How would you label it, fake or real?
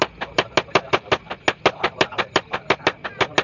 real